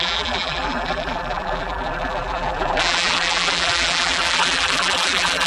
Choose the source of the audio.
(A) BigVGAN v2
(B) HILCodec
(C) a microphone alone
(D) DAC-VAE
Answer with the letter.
A